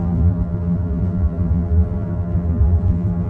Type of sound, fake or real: fake